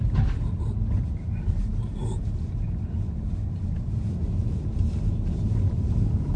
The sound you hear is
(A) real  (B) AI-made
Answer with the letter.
A